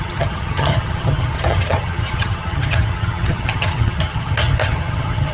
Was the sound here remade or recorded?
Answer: remade